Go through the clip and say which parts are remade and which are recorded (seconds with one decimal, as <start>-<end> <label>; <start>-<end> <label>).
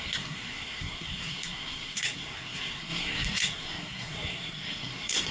0.0-5.3 remade